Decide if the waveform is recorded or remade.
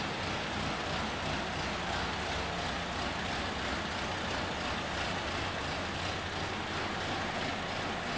recorded